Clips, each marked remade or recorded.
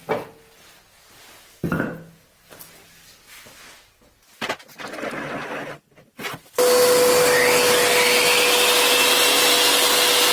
recorded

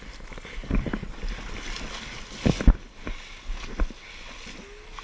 recorded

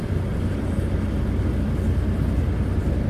recorded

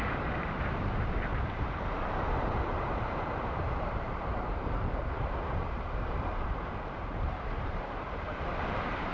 remade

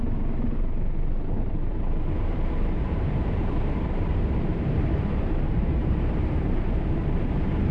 remade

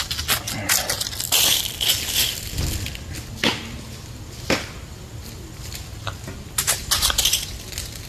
recorded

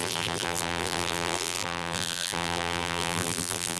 remade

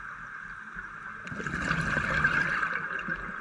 recorded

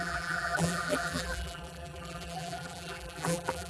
remade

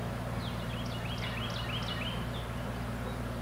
recorded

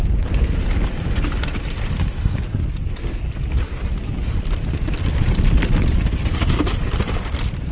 recorded